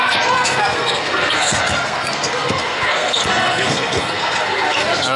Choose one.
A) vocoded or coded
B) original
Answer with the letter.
A